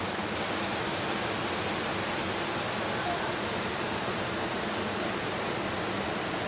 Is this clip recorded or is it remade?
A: recorded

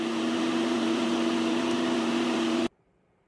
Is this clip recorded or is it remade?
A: remade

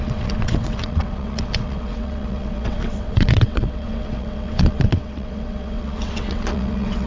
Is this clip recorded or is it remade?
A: remade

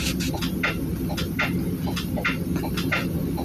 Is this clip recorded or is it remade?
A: recorded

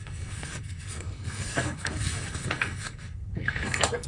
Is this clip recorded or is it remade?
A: remade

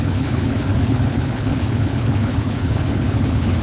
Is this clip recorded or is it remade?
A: remade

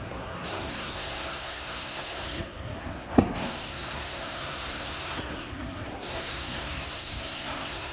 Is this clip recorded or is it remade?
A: remade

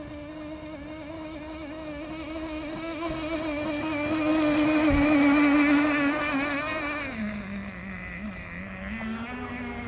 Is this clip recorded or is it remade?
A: recorded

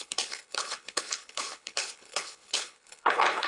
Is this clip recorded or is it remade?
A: remade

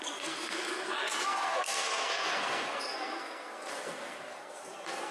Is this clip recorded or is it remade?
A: remade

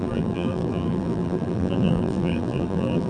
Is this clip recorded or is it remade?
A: remade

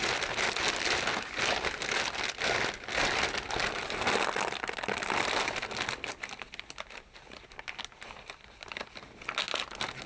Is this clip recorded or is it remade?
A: recorded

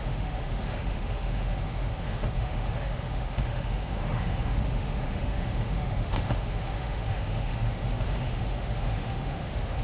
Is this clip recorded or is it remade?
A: remade